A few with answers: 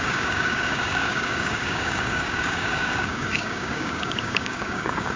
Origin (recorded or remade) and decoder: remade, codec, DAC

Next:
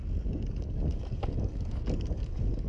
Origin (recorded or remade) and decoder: remade, codec, DAC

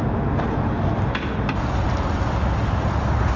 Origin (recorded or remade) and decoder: recorded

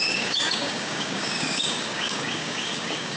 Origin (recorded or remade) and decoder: remade, codec, DAC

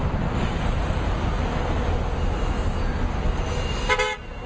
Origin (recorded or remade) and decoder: recorded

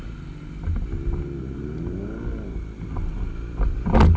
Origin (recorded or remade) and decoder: recorded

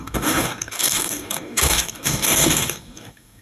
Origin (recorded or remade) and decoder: remade, codec, DAC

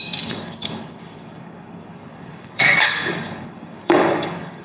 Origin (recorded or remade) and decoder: remade, codec, DAC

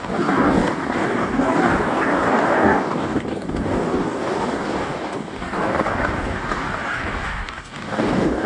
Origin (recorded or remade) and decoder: remade, codec, DAC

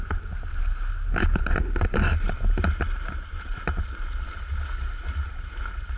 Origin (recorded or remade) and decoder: recorded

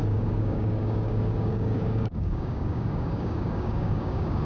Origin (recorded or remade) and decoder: remade, codec, DAC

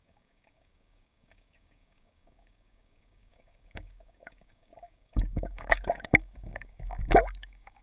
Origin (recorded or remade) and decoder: remade, codec, DAC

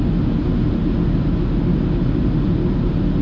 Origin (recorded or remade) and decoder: recorded